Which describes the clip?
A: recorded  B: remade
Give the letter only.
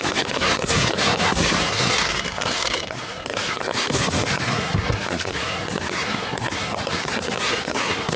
B